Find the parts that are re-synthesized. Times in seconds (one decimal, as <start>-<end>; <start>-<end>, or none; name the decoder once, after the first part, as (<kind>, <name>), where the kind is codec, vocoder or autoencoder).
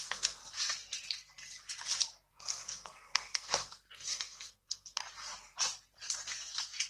0.0-0.4 (codec, SNAC); 2.3-5.0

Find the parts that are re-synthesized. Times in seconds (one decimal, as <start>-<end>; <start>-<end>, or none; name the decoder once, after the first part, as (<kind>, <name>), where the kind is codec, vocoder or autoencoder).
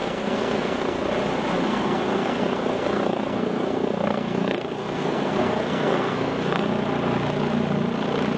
0.0-1.1 (codec, SNAC); 1.7-6.7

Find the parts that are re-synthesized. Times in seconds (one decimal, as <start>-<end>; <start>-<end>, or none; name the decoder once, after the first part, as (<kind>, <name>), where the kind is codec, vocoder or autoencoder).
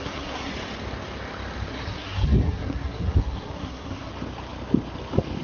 0.0-0.5 (codec, SNAC); 1.7-4.1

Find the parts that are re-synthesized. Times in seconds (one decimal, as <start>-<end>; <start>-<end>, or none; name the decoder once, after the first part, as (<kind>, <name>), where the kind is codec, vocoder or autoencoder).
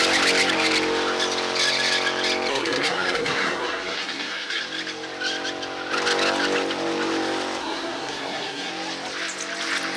2.5-4.6 (codec, SNAC); 7.6-8.7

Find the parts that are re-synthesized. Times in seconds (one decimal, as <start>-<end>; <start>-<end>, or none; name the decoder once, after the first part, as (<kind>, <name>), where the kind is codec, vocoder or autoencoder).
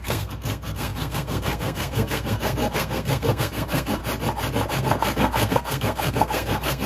0.0-4.0 (codec, SNAC); 4.7-6.9